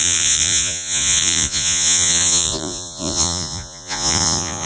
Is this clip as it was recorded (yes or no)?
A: no